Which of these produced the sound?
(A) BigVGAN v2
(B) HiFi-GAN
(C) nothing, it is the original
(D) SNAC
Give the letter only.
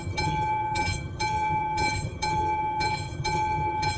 B